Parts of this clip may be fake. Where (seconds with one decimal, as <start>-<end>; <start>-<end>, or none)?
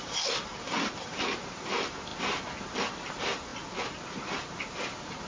0.0-2.1; 2.8-3.5; 4.7-5.3